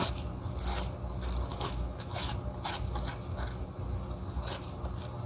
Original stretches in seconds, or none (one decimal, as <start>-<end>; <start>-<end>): 0.0-1.5; 2.3-5.3